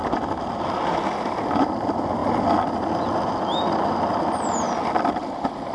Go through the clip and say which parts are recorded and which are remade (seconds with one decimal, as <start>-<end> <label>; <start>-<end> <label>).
0.0-5.7 recorded

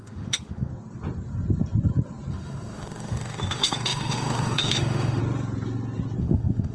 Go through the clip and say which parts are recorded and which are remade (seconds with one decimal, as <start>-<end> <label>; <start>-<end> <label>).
0.0-0.7 remade; 0.7-2.3 recorded; 2.3-5.2 remade; 5.2-6.2 recorded; 6.2-6.7 remade

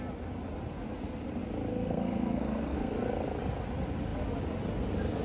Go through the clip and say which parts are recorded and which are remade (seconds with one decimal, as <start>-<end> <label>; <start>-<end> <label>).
0.0-1.7 recorded; 1.7-2.9 remade; 2.9-5.2 recorded

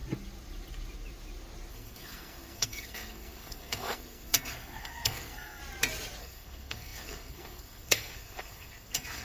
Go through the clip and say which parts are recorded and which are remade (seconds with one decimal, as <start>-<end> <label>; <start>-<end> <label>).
0.0-1.7 recorded; 1.7-5.6 remade; 5.6-6.2 recorded; 6.2-9.2 remade

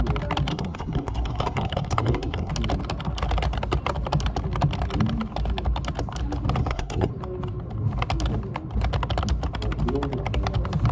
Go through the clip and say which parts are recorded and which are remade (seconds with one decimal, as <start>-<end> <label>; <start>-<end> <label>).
0.0-0.5 recorded; 0.5-2.5 remade; 2.5-6.6 recorded; 6.6-7.1 remade; 7.1-10.9 recorded

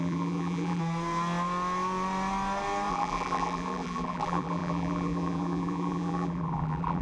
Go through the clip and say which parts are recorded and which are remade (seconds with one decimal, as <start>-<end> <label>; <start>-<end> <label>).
0.0-0.8 remade; 0.8-2.9 recorded; 2.9-7.0 remade

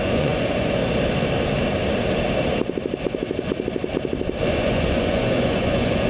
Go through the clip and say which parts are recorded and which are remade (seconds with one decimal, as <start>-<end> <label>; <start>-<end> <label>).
0.0-0.8 remade; 0.8-4.5 recorded; 4.5-6.1 remade

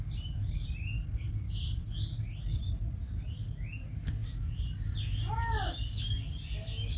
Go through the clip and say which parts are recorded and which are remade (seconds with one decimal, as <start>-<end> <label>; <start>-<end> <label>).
0.0-7.0 recorded